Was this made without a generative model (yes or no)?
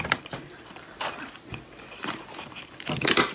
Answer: yes